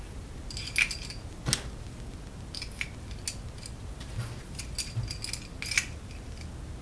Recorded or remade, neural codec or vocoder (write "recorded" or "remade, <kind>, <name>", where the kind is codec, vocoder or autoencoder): recorded